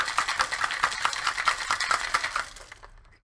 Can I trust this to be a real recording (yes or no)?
yes